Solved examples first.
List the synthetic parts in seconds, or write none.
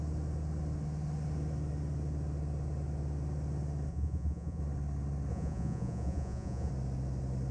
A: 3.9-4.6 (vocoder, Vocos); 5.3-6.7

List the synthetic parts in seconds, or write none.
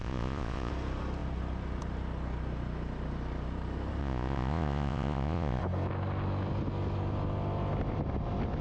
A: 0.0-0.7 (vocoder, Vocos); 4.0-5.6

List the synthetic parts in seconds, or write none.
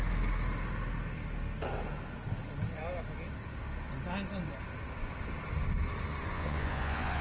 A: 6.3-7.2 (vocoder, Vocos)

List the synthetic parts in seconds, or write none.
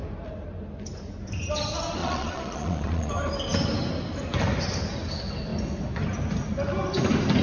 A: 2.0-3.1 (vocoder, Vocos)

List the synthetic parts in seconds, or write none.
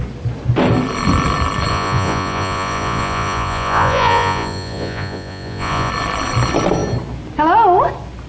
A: 1.7-5.9 (vocoder, Vocos)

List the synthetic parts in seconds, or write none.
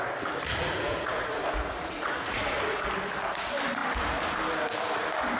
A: 0.5-2.9 (vocoder, Vocos)